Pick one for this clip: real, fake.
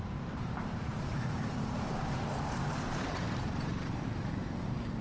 fake